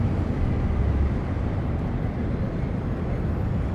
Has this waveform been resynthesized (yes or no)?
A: no